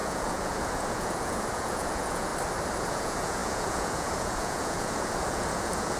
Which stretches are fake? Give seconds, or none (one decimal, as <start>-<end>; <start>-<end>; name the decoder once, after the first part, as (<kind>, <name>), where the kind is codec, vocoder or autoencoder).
0.0-2.3 (vocoder, Vocos); 2.9-6.0